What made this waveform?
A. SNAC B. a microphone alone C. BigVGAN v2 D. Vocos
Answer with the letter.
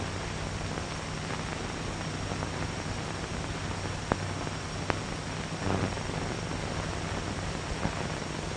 B